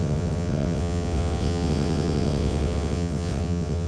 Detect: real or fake fake